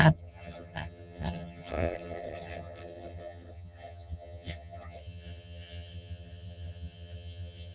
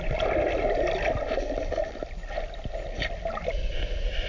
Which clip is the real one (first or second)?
second